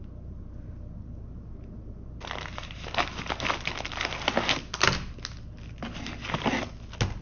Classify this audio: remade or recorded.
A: recorded